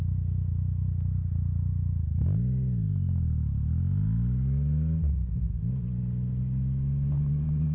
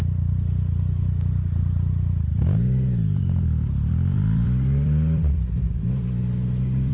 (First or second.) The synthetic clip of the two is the second